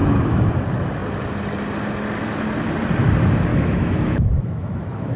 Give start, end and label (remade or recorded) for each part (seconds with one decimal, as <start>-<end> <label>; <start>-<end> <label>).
0.0-0.5 remade; 0.5-3.5 recorded; 3.5-5.2 remade